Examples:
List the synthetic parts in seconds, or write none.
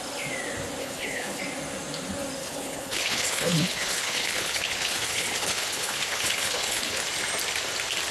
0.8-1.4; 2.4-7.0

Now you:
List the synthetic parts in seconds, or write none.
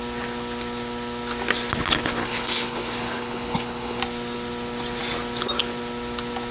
2.2-4.0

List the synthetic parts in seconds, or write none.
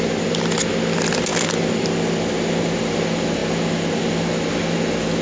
none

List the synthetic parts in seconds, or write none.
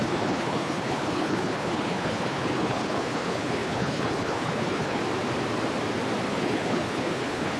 0.0-5.0; 6.3-7.6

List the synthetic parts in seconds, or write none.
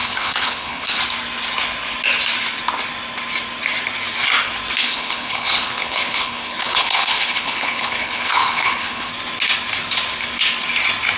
0.0-1.0; 4.8-9.1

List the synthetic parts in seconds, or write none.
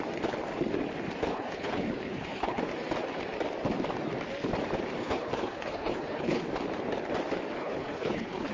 1.3-2.7; 5.0-6.4; 7.6-8.5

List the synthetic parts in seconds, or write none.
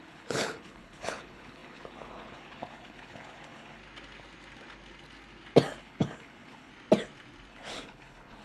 0.0-3.8; 5.8-6.7; 7.5-8.4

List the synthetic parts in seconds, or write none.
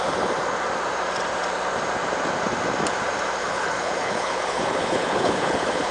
3.4-5.9